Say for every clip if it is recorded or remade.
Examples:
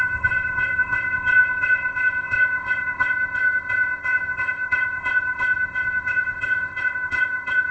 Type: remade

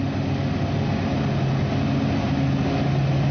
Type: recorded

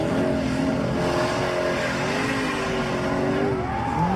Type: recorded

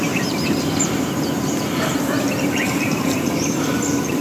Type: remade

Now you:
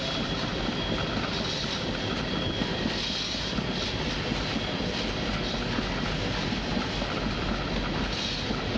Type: recorded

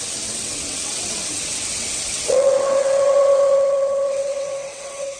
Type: remade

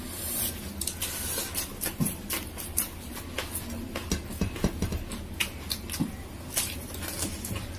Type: recorded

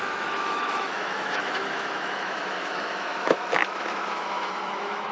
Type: remade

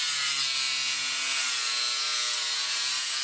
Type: recorded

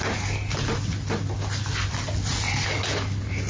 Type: recorded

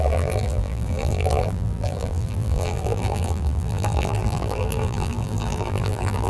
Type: remade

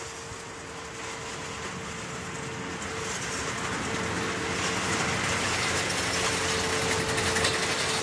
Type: recorded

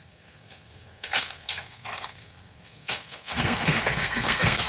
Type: remade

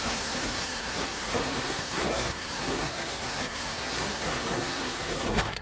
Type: remade